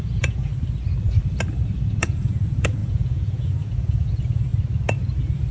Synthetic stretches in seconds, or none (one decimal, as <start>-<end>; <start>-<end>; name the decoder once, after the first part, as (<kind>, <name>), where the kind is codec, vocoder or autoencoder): 0.0-0.5 (vocoder, Vocos); 2.0-4.5